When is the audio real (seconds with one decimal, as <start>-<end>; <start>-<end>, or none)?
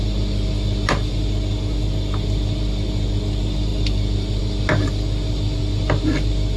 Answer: 0.0-6.6